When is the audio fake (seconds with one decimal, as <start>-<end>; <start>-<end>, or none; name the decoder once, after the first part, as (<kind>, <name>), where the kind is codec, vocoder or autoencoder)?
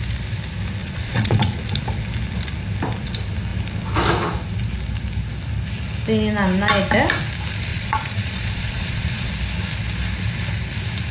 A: 0.8-1.6 (vocoder, Vocos); 7.7-9.3